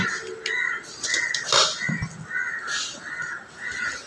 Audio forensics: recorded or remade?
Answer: recorded